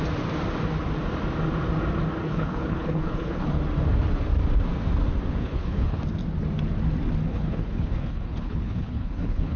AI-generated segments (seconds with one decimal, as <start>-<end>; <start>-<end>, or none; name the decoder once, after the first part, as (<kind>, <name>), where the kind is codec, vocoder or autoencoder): 2.2-3.6 (codec, HILCodec); 5.4-6.0; 7.3-9.6